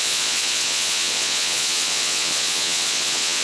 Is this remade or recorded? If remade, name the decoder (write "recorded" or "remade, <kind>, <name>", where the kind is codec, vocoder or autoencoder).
remade, vocoder, Vocos